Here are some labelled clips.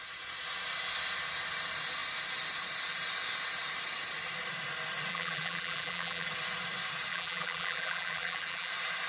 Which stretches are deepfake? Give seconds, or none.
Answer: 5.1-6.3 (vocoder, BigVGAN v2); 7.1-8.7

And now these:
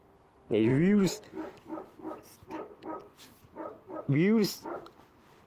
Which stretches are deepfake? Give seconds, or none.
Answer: 0.7-4.0 (vocoder, BigVGAN v2)

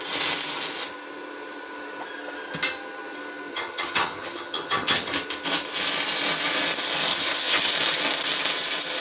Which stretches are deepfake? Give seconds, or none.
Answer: 3.5-5.1 (vocoder, HiFi-GAN); 7.1-7.7

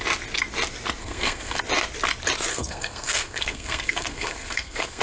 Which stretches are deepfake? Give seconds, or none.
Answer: 1.0-1.6 (codec, SNAC); 2.5-5.0

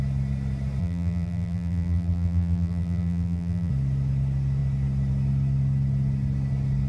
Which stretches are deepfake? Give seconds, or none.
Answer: 0.8-3.7 (vocoder, BigVGAN v2)

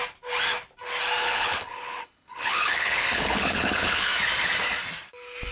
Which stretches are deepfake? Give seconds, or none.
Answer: 1.2-4.1 (codec, HILCodec)

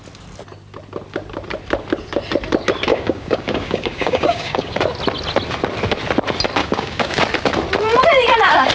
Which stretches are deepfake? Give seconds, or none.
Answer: 2.9-4.8 (codec, DAC); 6.6-7.2

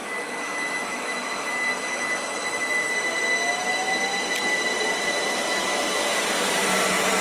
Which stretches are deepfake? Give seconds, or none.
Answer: 0.0-2.9 (autoencoder, DAC-VAE)